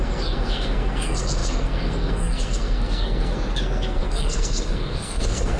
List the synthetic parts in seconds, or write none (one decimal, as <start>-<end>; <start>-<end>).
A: 0.0-5.6